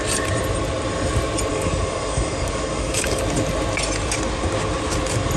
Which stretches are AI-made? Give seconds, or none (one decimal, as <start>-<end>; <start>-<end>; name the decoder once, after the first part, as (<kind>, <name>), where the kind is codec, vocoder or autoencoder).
1.5-3.2 (codec, DAC)